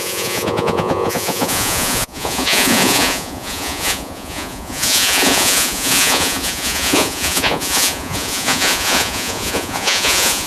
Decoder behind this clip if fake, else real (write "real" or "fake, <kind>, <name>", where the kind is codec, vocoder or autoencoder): fake, vocoder, Vocos